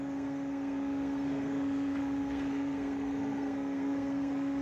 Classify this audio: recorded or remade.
remade